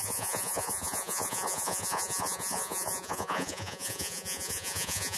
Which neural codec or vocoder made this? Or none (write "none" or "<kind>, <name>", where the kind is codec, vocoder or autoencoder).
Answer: vocoder, Vocos